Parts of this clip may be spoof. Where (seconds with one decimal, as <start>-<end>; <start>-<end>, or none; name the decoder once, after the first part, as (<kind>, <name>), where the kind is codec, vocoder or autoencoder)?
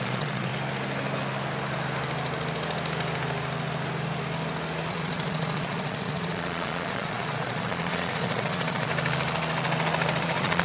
0.0-0.5 (vocoder, Vocos); 4.9-8.9; 10.2-10.6